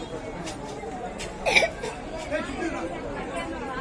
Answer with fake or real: fake